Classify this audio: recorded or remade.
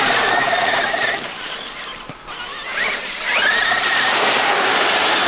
recorded